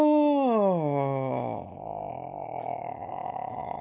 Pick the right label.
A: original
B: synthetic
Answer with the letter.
A